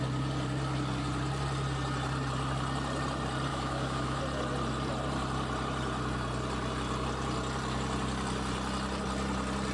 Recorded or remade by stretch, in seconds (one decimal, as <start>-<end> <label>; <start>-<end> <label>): 0.0-3.5 recorded; 3.5-4.2 remade; 4.2-9.7 recorded